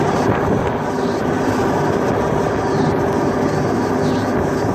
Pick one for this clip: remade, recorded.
recorded